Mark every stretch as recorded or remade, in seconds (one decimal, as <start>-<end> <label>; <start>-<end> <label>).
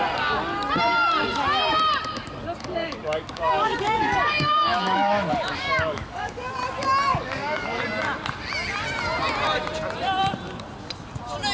0.0-2.6 recorded; 2.6-6.5 remade; 6.5-7.1 recorded; 7.1-7.8 remade; 7.8-11.5 recorded